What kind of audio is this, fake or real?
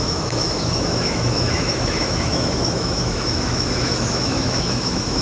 fake